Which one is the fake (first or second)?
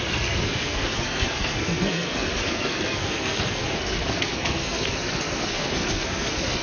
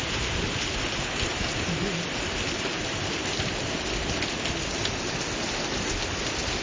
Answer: first